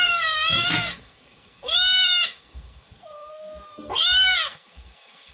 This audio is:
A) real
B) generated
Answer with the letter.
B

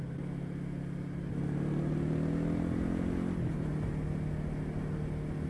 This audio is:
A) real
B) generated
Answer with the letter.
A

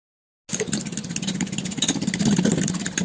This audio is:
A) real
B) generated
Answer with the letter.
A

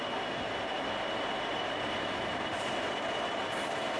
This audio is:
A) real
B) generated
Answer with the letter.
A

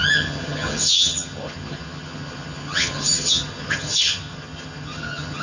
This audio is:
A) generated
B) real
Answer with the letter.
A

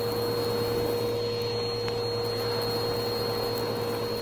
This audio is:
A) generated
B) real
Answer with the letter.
B